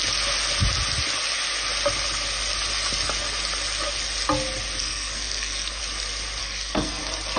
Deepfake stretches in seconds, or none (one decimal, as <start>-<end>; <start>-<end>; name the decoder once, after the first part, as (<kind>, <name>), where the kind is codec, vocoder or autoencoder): 4.8-5.8 (codec, SNAC); 6.4-7.0